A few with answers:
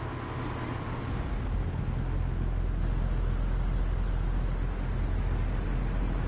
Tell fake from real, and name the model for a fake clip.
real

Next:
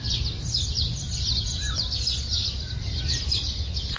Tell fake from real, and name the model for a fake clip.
real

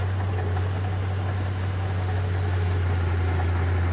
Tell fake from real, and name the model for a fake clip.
real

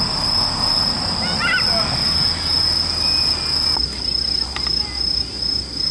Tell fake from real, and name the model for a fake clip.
real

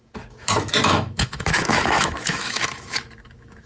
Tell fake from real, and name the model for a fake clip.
fake, autoencoder, DAC-VAE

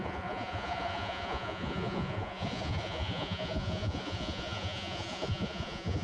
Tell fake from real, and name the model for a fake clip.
fake, vocoder, Vocos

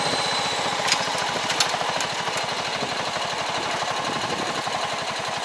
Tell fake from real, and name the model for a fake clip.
real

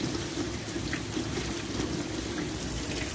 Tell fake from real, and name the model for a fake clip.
real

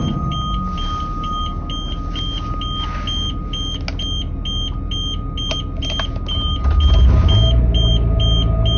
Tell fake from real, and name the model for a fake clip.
real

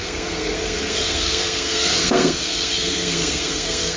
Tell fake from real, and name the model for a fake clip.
fake, codec, SNAC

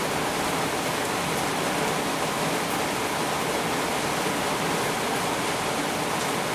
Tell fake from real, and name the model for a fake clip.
real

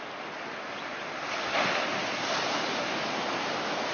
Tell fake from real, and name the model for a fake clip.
real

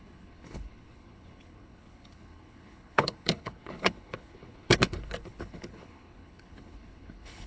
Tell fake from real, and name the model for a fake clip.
fake, codec, HILCodec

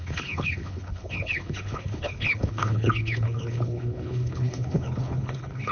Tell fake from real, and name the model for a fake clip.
fake, codec, HILCodec